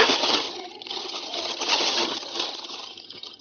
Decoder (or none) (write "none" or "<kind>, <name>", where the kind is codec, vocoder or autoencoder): vocoder, HiFi-GAN